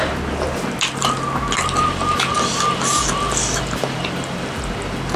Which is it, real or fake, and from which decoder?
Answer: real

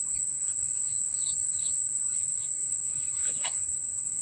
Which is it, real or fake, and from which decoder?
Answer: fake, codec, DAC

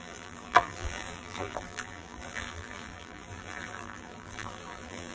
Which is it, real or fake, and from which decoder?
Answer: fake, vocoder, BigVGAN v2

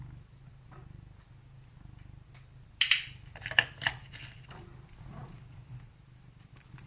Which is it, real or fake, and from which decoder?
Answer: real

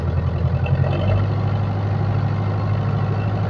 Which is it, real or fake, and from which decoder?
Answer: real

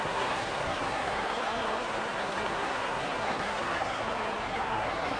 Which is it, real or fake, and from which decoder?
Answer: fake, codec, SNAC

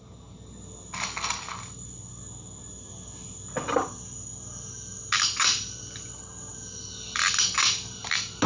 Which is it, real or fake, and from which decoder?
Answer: real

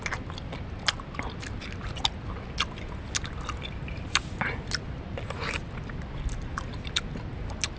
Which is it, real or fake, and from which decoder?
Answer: real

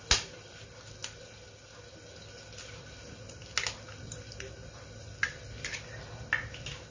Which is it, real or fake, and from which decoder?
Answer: real